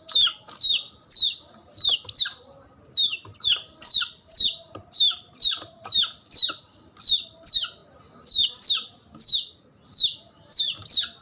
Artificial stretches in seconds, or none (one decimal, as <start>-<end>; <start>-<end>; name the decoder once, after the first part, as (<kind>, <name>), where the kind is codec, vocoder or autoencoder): 0.0-7.8 (vocoder, BigVGAN v2); 10.3-11.2